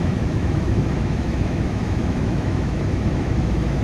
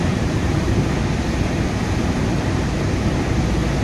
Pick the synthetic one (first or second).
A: first